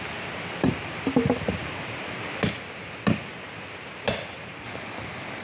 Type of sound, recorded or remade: recorded